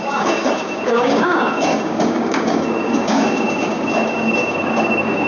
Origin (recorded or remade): remade